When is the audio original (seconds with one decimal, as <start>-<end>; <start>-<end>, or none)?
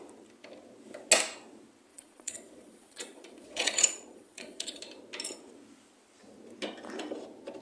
0.0-1.9; 4.8-7.6